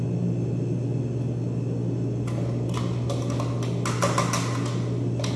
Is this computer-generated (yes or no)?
no